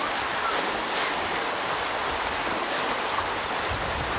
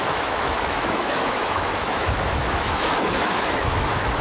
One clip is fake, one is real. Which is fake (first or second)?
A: second